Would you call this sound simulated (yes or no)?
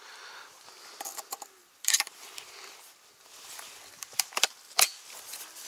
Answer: yes